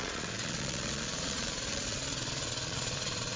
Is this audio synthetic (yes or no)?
yes